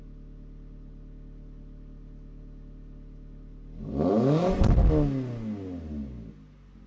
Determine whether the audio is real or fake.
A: real